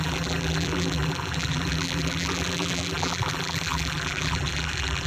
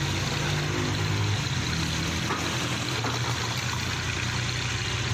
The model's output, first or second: first